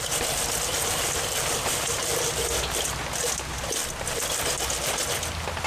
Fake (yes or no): no